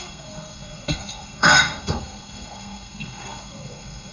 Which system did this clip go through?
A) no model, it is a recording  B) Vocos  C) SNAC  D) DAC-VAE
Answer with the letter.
C